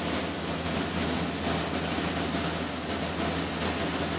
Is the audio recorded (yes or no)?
yes